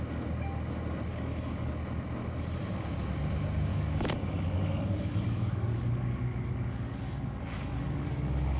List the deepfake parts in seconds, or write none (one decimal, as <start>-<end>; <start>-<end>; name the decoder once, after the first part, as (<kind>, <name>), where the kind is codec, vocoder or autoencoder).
1.1-1.7 (codec, DAC); 3.7-8.6